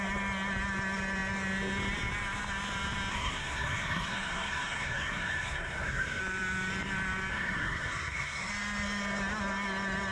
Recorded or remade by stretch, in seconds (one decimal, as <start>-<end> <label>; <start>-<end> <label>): 0.0-3.1 recorded; 3.1-6.2 remade; 6.2-7.3 recorded; 7.3-8.5 remade; 8.5-10.1 recorded